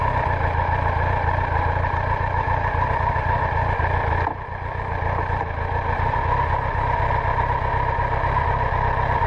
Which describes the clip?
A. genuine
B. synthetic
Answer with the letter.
A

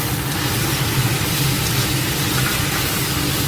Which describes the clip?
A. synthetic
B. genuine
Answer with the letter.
B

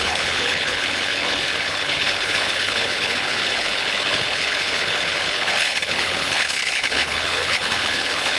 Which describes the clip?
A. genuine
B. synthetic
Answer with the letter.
B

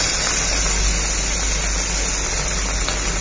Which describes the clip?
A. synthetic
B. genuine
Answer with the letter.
B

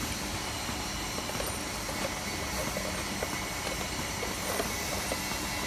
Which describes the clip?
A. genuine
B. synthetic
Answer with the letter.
A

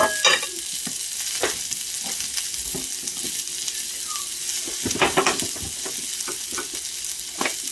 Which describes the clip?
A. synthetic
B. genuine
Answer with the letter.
B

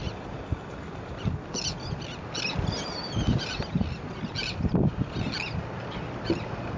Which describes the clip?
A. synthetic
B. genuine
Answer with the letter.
A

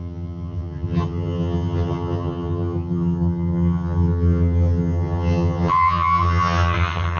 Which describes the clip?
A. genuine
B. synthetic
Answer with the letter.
B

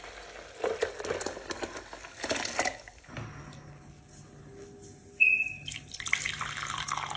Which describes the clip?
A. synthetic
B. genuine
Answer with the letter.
B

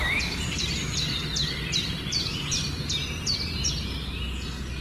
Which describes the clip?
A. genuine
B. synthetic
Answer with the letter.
A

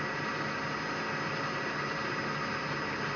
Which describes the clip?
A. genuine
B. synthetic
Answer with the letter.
A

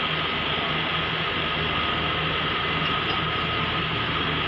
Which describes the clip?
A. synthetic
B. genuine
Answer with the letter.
B